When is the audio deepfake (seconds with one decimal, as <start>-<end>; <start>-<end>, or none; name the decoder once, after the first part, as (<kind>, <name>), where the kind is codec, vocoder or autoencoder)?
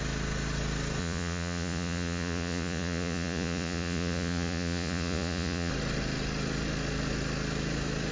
1.0-5.7 (vocoder, Vocos)